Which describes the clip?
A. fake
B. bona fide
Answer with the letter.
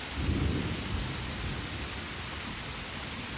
B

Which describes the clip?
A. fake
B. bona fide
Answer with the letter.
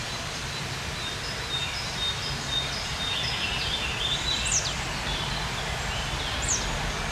B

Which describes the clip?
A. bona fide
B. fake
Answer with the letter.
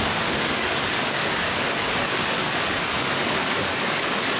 B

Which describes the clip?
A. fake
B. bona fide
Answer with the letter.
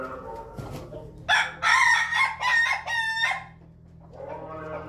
B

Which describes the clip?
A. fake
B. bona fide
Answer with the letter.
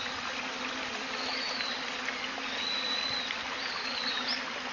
B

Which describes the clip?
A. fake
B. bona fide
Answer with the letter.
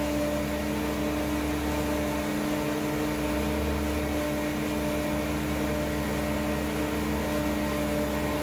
B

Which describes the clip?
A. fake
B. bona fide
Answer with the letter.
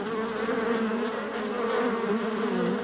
B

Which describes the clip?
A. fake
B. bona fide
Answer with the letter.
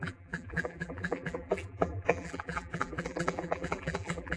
A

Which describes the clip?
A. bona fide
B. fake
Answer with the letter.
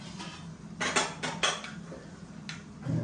A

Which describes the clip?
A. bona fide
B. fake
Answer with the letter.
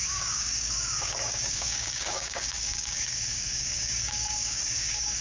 B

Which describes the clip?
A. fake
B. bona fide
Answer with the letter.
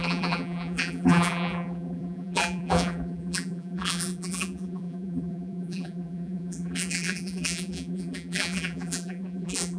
A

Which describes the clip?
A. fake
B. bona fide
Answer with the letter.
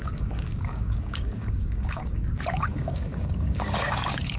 A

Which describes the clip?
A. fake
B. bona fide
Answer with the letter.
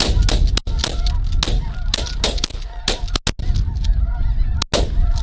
B